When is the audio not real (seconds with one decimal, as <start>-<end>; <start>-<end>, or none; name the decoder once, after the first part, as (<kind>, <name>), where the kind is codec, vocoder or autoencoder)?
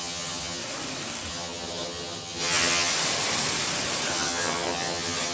0.0-0.6 (vocoder, HiFi-GAN); 1.3-2.9; 4.1-5.3